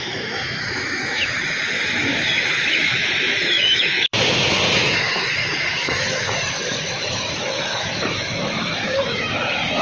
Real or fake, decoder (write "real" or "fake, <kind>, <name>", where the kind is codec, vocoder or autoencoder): fake, autoencoder, DAC-VAE